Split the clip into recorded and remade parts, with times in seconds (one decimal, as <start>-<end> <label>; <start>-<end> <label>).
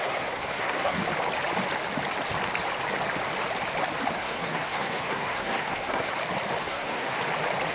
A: 0.0-1.0 remade; 1.0-4.1 recorded; 4.1-6.1 remade; 6.1-6.6 recorded; 6.6-7.2 remade; 7.2-7.7 recorded